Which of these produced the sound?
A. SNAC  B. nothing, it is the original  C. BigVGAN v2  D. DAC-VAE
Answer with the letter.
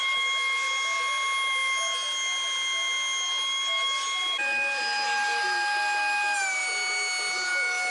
B